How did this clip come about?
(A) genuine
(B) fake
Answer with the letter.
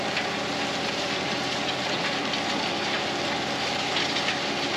A